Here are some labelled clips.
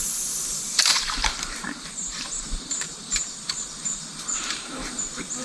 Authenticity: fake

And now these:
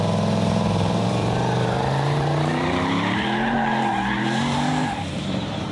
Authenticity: fake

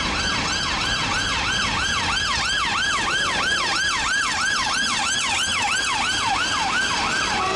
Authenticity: real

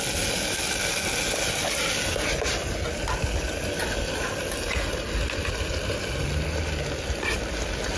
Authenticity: real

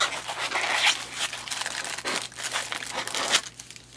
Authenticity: real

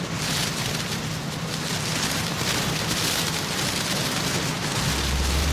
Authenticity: real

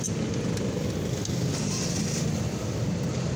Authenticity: real